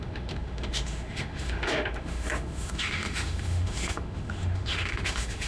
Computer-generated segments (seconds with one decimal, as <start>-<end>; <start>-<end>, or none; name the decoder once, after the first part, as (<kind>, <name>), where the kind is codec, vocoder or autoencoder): 0.0-5.5 (autoencoder, DAC-VAE)